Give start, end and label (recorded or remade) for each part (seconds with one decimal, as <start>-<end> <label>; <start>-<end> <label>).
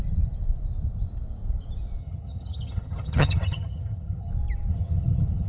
0.0-2.0 recorded; 2.0-4.3 remade; 4.3-4.7 recorded; 4.7-5.5 remade